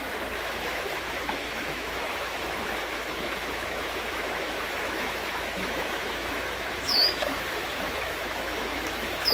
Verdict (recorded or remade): remade